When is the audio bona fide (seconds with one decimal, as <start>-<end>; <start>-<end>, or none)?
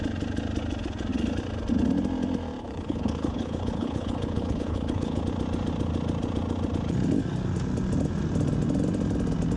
0.0-2.6; 5.2-9.6